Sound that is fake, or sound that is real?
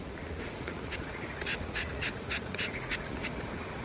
fake